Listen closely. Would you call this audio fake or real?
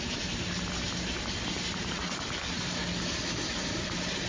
real